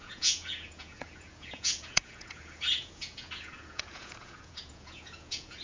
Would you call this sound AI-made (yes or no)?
yes